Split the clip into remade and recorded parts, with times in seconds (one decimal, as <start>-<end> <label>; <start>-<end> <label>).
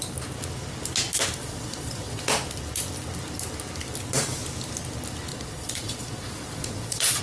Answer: 0.0-1.4 recorded; 1.4-2.3 remade; 2.3-5.3 recorded; 5.3-7.2 remade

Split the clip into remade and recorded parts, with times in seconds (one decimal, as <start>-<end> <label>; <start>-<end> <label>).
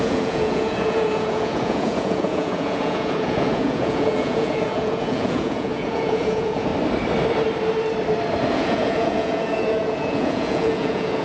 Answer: 0.0-6.7 remade; 6.7-8.5 recorded; 8.5-11.2 remade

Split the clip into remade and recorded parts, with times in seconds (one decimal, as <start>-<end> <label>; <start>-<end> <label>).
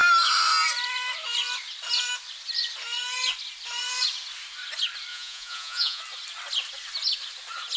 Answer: 0.0-5.1 recorded; 5.1-6.0 remade; 6.0-7.8 recorded